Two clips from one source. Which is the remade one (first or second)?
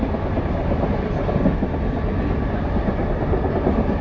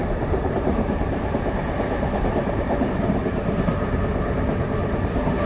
second